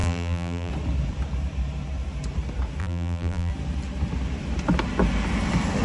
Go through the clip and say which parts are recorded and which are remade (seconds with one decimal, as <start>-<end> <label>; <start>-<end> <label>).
0.0-0.7 remade; 0.7-2.8 recorded; 2.8-3.5 remade; 3.5-5.8 recorded